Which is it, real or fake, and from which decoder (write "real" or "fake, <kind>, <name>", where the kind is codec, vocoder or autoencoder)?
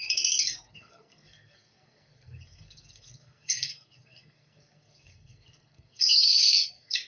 fake, codec, SNAC